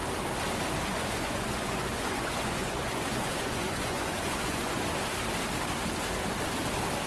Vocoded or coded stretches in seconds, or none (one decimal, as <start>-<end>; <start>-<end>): 0.9-4.8